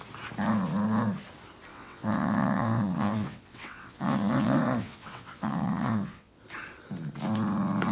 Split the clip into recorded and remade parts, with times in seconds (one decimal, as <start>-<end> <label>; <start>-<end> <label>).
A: 0.0-1.7 recorded; 1.7-6.4 remade; 6.4-7.9 recorded